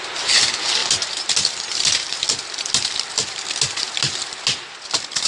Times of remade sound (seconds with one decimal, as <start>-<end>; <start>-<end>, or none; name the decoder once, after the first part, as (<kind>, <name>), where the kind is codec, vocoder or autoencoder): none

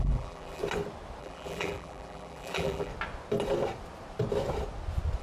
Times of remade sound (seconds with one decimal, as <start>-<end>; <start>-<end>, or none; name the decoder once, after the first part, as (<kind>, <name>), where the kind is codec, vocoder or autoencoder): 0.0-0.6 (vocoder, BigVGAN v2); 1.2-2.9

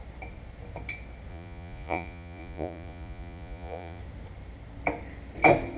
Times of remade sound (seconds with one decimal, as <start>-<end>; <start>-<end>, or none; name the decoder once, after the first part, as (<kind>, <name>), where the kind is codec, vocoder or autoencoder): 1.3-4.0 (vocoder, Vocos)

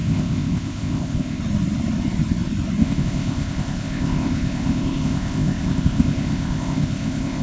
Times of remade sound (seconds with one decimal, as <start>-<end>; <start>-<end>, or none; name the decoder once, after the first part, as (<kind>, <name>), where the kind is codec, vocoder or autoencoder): 0.0-1.4 (codec, ZipCodec); 2.8-7.4